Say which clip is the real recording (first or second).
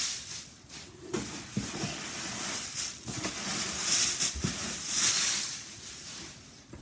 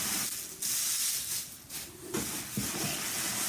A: second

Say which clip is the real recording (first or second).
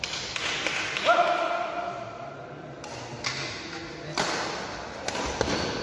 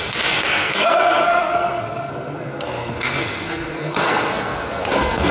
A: first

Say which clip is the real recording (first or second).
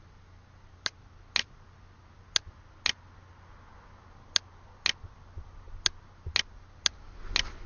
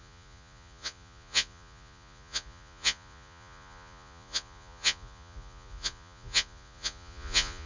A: first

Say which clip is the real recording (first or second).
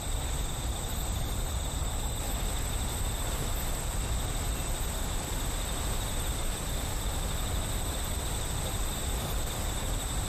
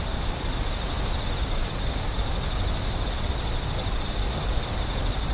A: second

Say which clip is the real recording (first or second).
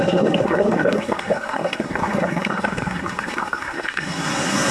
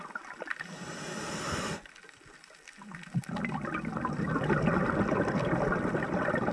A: second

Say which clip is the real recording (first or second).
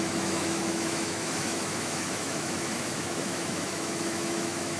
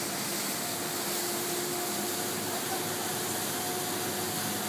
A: second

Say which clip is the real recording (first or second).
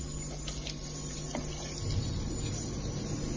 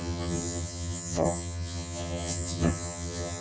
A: first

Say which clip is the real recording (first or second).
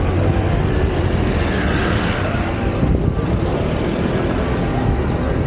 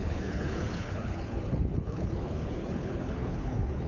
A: first